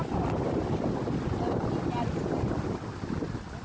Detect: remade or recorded recorded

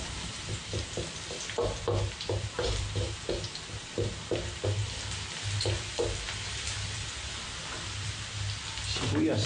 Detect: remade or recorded remade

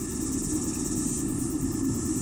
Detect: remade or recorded recorded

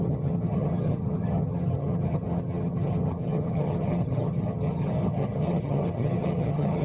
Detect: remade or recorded remade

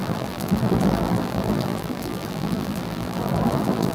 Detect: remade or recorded remade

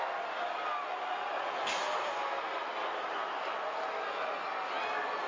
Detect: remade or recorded recorded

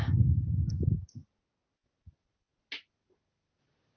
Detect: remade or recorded recorded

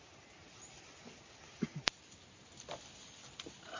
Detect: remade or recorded recorded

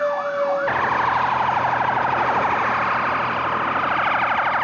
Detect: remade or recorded recorded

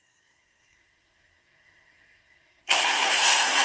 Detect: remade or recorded remade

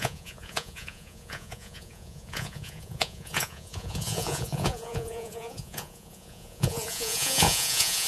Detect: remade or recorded remade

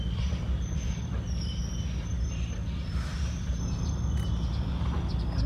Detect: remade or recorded recorded